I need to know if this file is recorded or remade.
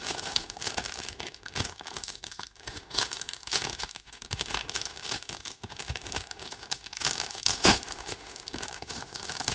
remade